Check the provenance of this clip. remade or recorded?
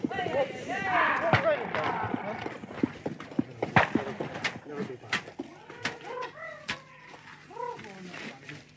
recorded